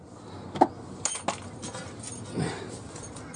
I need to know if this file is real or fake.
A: real